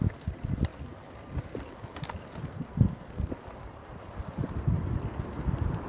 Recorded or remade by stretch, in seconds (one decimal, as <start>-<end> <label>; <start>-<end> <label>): 0.0-2.4 recorded; 2.4-3.3 remade; 3.3-5.9 recorded